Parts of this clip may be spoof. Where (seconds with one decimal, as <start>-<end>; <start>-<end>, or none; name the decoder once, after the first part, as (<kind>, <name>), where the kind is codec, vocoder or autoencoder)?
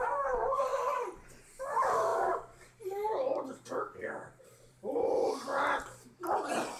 0.0-0.7 (vocoder, BigVGAN v2); 1.7-6.8